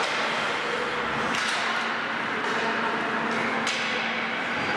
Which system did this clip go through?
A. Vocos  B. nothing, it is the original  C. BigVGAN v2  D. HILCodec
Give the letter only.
B